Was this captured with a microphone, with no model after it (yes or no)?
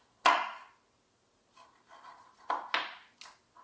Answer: yes